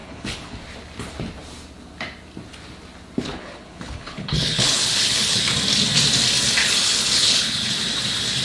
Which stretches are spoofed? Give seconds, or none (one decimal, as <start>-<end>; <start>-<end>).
0.0-0.6; 3.3-5.4; 6.6-7.7